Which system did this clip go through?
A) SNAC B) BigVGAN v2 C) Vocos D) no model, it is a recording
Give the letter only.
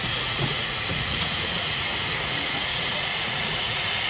C